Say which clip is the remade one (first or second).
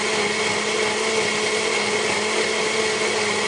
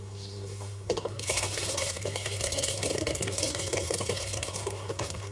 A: second